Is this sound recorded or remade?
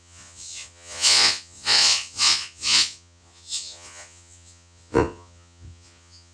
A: remade